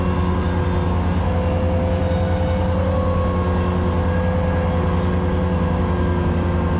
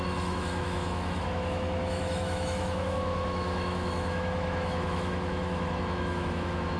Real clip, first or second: first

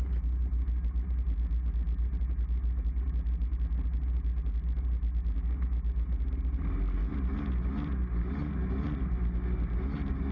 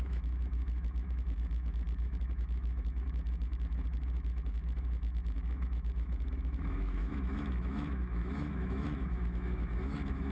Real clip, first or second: first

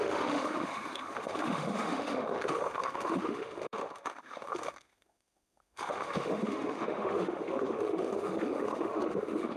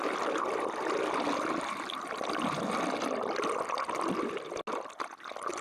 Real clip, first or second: second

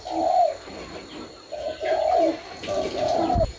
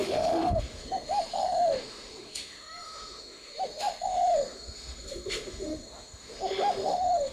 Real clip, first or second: first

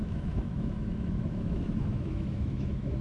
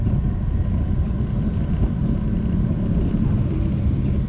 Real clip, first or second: second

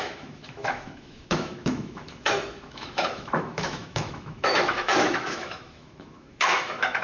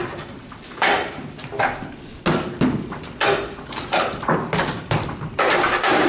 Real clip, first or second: second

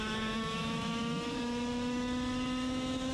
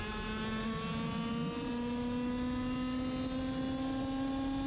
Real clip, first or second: second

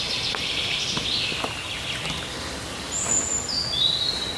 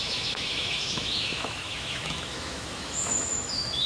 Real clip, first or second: first